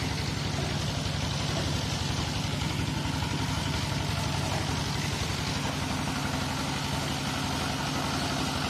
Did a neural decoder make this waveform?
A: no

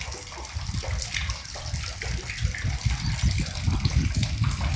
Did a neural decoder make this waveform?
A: no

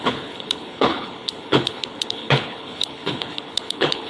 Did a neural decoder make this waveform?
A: yes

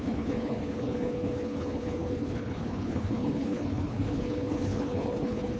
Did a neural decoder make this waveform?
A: yes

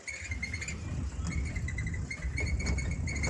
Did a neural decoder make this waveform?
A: no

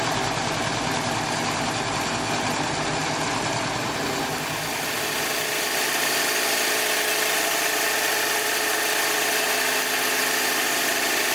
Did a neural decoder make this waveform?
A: no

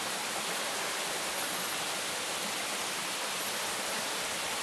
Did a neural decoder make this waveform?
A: yes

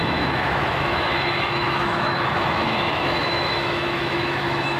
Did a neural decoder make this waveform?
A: yes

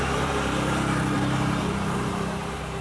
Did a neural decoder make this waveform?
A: yes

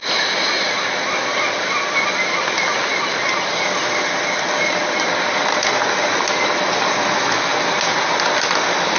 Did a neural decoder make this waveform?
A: no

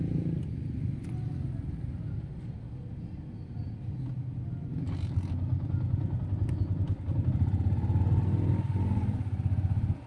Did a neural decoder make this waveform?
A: no